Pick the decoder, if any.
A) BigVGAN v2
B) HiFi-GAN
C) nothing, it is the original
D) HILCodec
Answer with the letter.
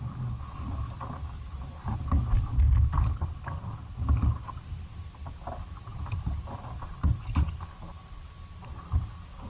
C